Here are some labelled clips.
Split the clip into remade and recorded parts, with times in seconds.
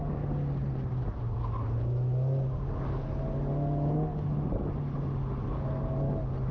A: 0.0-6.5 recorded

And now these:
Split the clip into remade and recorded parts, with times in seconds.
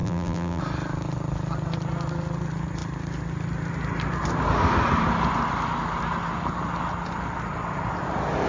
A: 0.0-0.6 remade; 0.6-8.5 recorded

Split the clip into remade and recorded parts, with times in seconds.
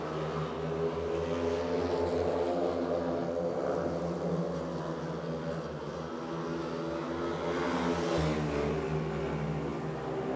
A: 0.0-9.7 recorded; 9.7-10.4 remade